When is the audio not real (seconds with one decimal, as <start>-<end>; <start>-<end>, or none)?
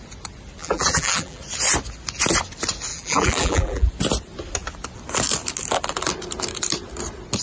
0.6-1.4; 2.9-3.9